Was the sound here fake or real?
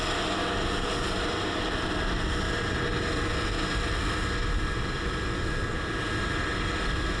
real